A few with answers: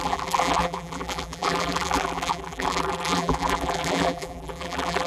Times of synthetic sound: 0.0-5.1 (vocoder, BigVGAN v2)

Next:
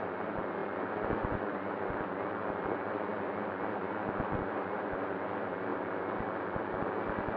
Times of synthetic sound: none